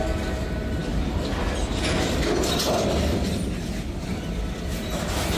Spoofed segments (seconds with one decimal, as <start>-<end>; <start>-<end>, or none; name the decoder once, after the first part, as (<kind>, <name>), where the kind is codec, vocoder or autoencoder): none